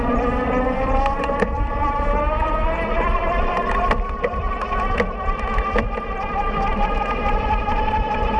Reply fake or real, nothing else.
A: real